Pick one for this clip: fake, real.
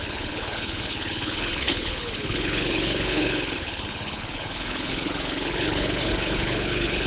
fake